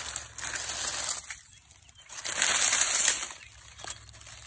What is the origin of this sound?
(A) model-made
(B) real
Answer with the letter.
B